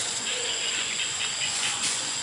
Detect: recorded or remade remade